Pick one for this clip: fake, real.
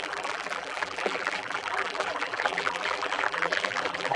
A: fake